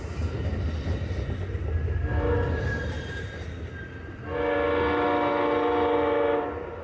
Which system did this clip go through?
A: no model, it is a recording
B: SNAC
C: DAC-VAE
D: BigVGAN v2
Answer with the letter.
A